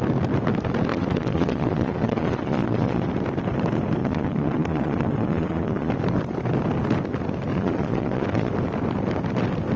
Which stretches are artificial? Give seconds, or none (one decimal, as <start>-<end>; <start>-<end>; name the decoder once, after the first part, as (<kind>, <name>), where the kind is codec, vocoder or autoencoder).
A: 0.9-3.1 (vocoder, Vocos); 4.0-5.9; 7.5-8.5